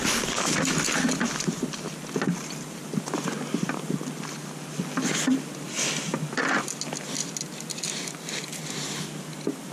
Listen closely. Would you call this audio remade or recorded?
recorded